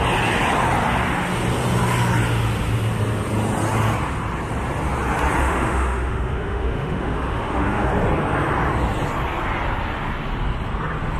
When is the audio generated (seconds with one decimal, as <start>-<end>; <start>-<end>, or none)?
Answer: 5.4-7.9

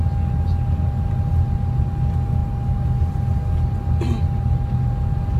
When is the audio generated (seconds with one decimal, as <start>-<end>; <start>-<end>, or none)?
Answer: none

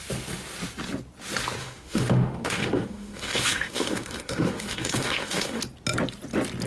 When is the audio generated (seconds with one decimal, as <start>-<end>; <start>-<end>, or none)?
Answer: 1.6-5.6

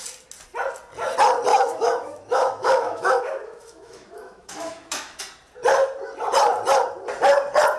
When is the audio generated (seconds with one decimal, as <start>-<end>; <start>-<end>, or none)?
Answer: 1.5-5.2

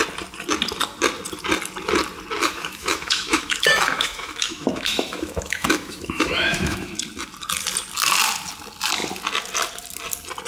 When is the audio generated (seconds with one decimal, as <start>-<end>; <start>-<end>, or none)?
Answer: 2.4-7.0

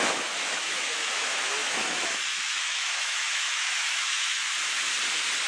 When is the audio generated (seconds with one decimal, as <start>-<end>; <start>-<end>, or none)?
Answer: 0.0-4.4

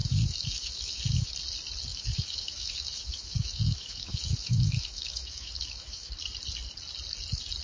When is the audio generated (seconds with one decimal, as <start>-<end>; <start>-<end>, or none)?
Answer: 0.0-1.3; 1.9-6.1

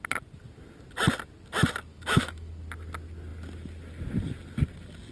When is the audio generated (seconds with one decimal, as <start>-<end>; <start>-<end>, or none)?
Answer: 1.9-2.5